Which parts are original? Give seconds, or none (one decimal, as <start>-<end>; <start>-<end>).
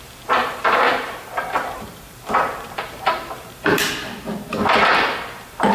0.0-0.4; 3.8-5.7